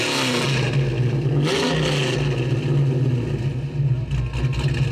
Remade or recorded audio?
recorded